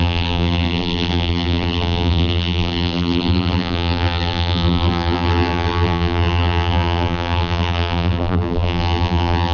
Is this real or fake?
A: fake